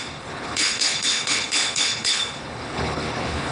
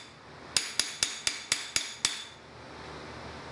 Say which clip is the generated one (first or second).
first